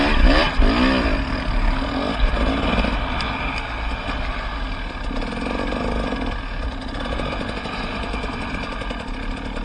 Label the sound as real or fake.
real